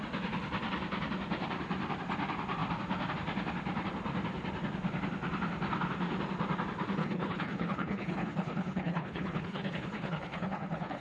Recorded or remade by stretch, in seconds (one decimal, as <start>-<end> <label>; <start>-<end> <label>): 0.0-7.0 recorded; 7.0-11.0 remade